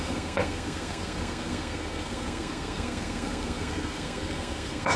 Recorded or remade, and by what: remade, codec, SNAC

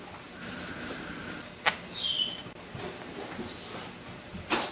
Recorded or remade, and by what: recorded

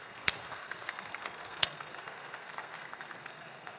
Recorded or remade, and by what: remade, codec, SNAC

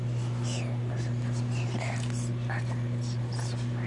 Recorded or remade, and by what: recorded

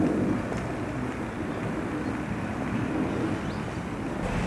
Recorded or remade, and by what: recorded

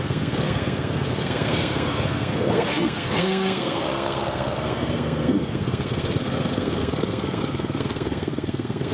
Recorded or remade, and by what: remade, codec, SNAC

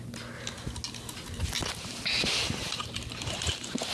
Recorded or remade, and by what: recorded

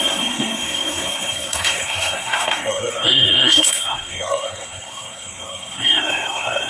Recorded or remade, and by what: remade, codec, SNAC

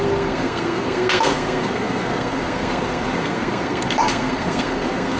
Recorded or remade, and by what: remade, codec, SNAC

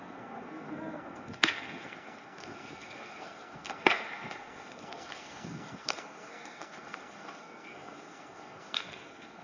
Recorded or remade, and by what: remade, codec, SNAC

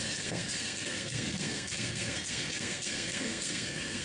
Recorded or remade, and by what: remade, codec, SNAC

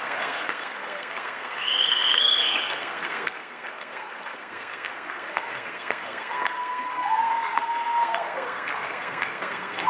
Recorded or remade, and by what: remade, codec, SNAC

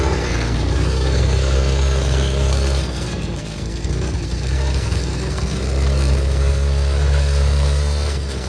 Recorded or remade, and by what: remade, codec, SNAC